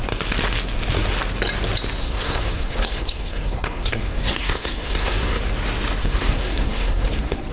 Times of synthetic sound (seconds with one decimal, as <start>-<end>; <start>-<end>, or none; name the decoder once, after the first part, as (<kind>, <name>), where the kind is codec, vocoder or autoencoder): 2.0-5.4 (codec, SNAC); 6.0-7.5